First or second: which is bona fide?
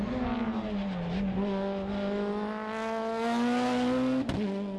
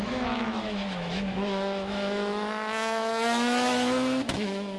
first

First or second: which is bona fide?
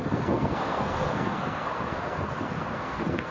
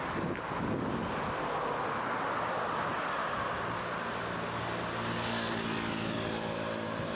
second